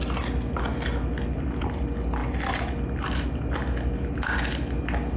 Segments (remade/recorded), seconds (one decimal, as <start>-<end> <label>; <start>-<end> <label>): 0.0-5.2 recorded

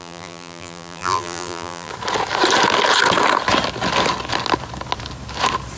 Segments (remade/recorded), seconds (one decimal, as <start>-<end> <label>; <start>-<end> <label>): 0.0-1.9 remade; 1.9-5.8 recorded

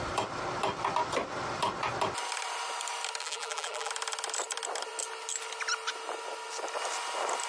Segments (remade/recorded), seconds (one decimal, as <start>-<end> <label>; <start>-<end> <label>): 0.0-3.2 recorded; 3.2-3.9 remade; 3.9-7.5 recorded

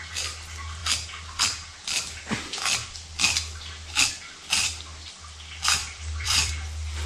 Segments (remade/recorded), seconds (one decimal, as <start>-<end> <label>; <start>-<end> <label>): 0.0-5.8 recorded; 5.8-6.5 remade; 6.5-7.1 recorded

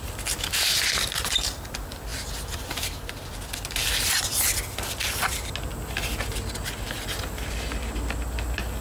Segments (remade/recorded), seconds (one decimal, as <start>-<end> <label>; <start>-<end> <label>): 0.0-8.8 recorded

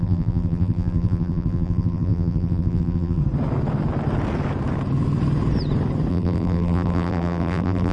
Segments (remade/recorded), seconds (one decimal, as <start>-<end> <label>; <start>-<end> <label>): 0.0-3.2 remade; 3.2-6.1 recorded; 6.1-7.9 remade

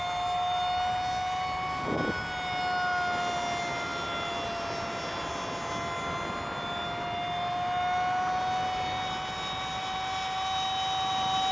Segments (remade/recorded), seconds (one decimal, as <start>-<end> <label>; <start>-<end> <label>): 0.0-11.5 recorded